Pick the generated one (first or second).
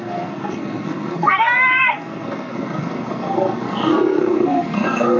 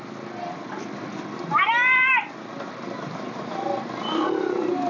first